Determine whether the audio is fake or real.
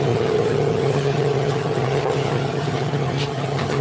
fake